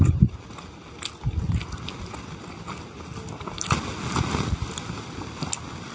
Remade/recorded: recorded